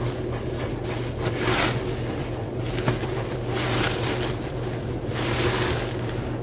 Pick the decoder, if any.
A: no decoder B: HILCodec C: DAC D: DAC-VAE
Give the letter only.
A